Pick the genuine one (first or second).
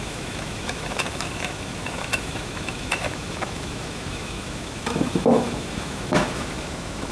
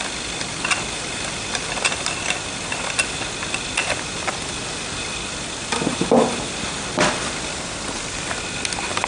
second